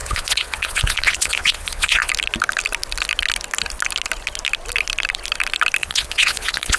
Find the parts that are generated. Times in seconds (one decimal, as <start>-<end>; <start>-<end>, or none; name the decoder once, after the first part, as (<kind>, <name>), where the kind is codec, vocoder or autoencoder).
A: 0.0-2.1 (vocoder, Vocos); 5.8-6.8